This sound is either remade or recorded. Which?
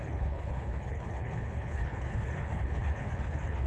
remade